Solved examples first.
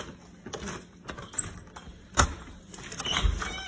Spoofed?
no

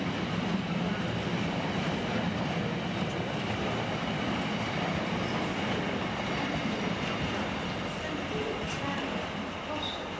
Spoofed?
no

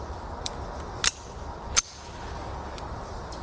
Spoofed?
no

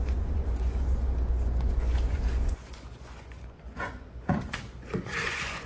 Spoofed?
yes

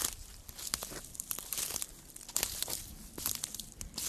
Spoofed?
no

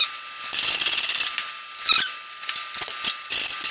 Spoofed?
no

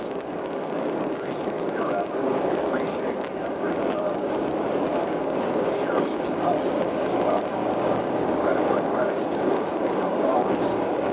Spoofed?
yes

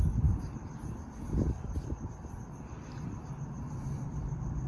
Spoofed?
no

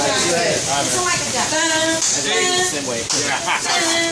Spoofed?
no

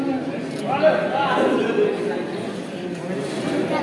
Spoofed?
no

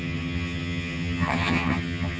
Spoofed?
yes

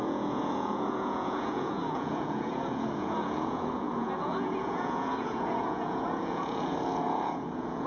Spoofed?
yes